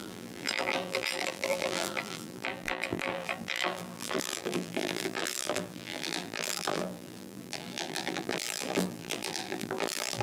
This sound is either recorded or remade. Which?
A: remade